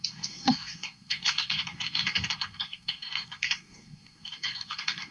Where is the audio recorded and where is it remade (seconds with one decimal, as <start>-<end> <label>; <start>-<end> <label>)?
0.0-5.1 remade